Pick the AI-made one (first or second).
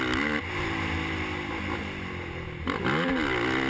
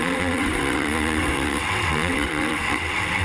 second